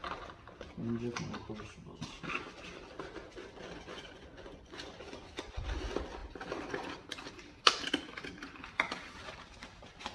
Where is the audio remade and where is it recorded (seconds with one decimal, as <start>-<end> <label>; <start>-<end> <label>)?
0.0-3.4 recorded; 3.4-5.3 remade; 5.3-10.1 recorded